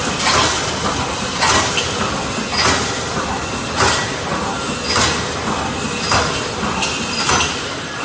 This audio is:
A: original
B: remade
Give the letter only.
A